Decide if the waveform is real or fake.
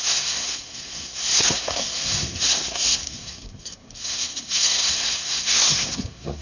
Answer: fake